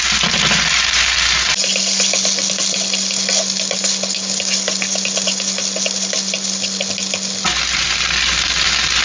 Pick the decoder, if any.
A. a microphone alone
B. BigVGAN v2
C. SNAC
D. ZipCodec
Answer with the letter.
A